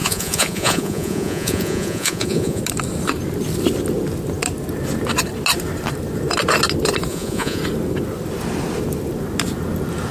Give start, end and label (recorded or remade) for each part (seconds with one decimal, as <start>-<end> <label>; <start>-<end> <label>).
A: 0.0-2.6 remade; 2.6-7.1 recorded; 7.1-7.6 remade; 7.6-10.1 recorded